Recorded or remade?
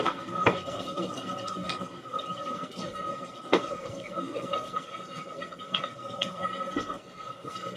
remade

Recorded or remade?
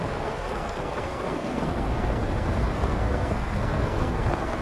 remade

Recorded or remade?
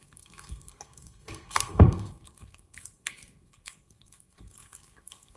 remade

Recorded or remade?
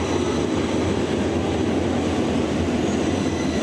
recorded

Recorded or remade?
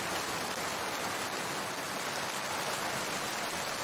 recorded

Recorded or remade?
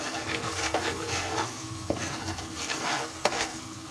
remade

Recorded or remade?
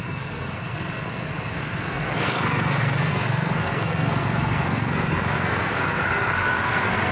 remade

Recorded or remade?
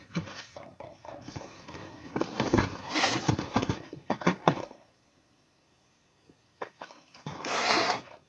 remade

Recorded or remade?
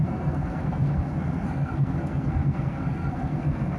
remade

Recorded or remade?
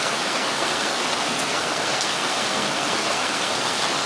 remade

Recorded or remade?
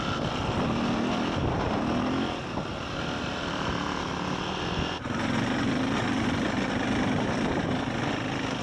recorded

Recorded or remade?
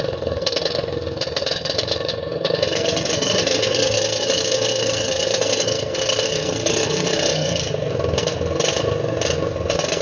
remade